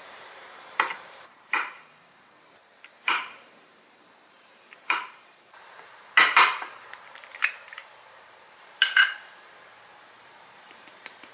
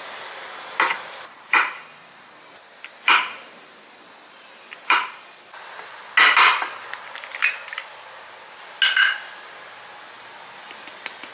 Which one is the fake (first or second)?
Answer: first